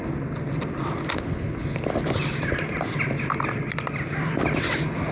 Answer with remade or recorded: recorded